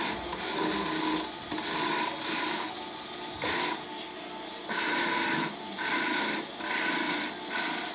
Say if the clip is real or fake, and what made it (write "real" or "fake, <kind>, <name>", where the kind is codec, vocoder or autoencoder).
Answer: real